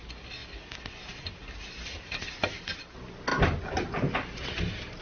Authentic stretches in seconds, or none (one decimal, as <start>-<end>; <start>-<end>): 0.0-5.0